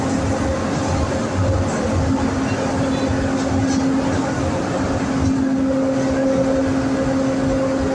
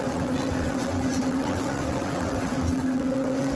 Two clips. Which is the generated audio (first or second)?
second